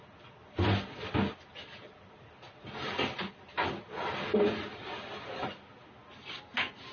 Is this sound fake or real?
real